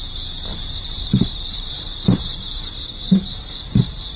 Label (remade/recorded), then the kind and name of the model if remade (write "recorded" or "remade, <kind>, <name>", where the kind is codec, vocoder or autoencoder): remade, vocoder, BigVGAN v2